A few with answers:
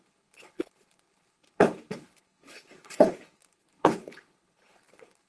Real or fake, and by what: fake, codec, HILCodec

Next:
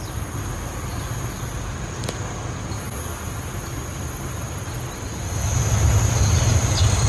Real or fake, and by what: real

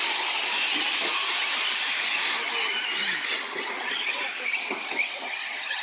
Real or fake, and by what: real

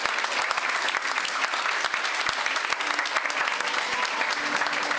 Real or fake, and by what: real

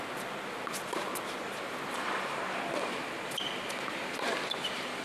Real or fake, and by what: real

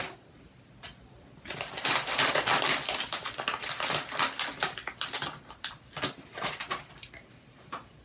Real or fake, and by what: real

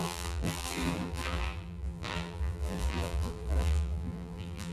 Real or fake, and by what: fake, vocoder, BigVGAN v2